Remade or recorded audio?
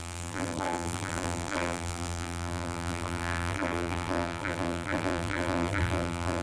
remade